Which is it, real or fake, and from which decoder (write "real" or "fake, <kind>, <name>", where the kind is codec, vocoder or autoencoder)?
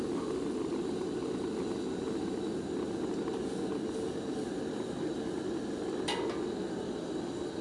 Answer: real